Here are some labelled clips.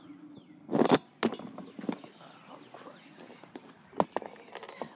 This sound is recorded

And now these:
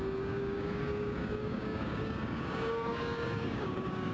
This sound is remade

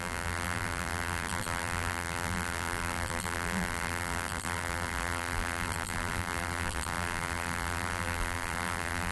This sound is remade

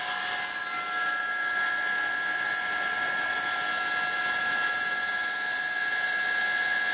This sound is recorded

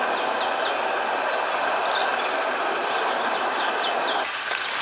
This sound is recorded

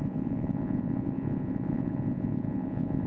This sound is remade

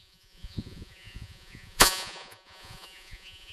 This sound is remade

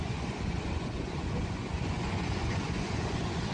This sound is remade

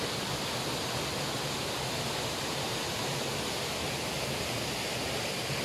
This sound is recorded